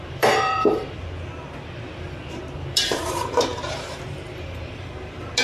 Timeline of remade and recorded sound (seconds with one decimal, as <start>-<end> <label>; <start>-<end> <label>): 0.0-0.8 remade; 0.8-2.7 recorded; 2.7-5.4 remade

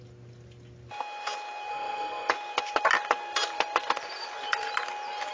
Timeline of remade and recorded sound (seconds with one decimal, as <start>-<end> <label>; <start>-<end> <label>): 0.0-1.7 recorded; 1.7-2.3 remade; 2.3-5.3 recorded

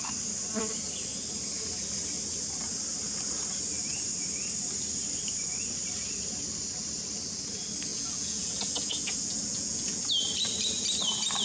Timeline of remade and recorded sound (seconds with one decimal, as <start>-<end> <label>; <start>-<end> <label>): 0.0-7.9 recorded; 7.9-10.1 remade; 10.1-11.4 recorded

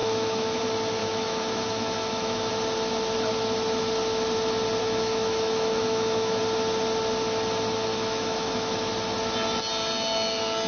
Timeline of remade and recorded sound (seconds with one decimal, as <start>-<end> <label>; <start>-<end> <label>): 0.0-0.6 remade; 0.6-1.0 recorded; 1.0-2.5 remade; 2.5-4.8 recorded; 4.8-6.4 remade; 6.4-7.9 recorded; 7.9-8.9 remade; 8.9-10.7 recorded